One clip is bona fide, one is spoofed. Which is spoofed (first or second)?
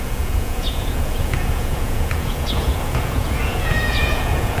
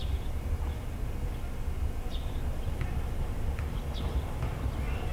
first